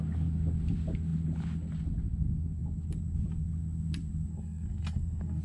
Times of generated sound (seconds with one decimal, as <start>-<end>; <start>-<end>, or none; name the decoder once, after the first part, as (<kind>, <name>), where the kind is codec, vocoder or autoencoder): 4.3-5.4 (codec, SNAC)